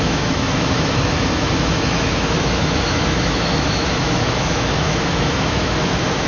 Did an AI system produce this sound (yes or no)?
yes